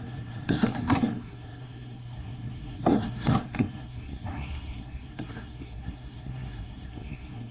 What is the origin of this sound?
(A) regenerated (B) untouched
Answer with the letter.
A